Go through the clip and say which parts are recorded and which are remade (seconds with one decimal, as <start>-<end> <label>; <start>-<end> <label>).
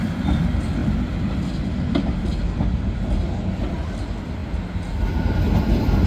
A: 0.0-0.8 recorded; 0.8-1.4 remade; 1.4-2.3 recorded; 2.3-3.6 remade; 3.6-6.1 recorded